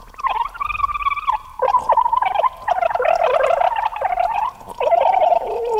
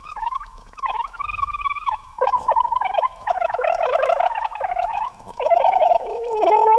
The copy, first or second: second